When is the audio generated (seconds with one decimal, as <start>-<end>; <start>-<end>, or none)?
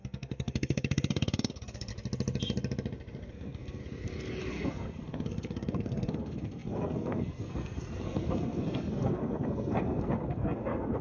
0.0-1.9; 3.3-3.8; 4.5-11.0